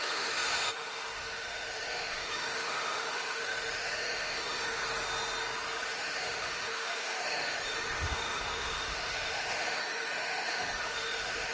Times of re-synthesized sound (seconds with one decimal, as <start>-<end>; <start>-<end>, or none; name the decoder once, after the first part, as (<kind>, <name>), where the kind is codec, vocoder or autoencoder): 0.0-4.8 (autoencoder, DAC-VAE); 5.9-11.5

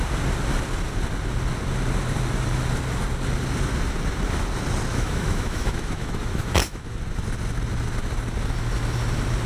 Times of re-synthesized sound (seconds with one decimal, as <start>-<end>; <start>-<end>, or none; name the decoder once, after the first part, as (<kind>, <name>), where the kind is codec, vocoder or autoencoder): 4.9-7.0 (autoencoder, DAC-VAE)

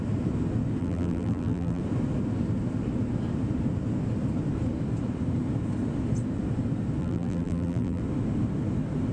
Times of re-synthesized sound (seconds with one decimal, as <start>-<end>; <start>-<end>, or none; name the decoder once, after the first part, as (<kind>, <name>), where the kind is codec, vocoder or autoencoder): 0.8-1.8 (vocoder, BigVGAN v2); 7.0-8.0

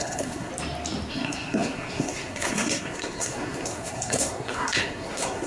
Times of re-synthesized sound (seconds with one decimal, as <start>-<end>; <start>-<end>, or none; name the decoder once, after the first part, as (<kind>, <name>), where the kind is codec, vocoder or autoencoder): 0.0-0.5 (codec, SNAC); 1.1-5.5

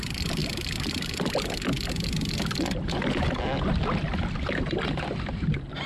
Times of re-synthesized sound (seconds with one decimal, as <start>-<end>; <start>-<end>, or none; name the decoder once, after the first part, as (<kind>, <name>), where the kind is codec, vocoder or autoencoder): none

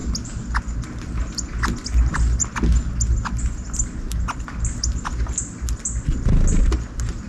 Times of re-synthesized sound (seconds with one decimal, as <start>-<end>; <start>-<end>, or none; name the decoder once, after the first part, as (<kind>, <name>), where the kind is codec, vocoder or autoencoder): none